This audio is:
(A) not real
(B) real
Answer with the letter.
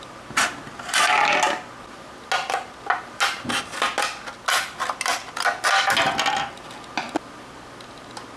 B